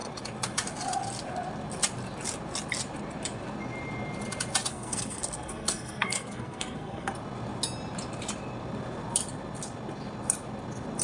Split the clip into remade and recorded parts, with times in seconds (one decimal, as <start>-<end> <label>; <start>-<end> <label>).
0.0-4.7 recorded; 4.7-7.1 remade; 7.1-11.0 recorded